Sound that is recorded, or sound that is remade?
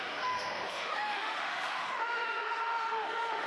remade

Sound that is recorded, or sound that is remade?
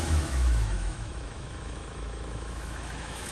remade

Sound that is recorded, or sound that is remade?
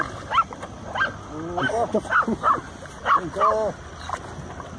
recorded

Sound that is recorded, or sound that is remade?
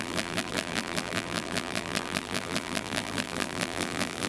remade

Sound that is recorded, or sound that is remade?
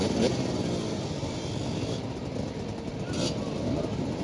remade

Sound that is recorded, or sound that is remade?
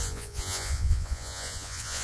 remade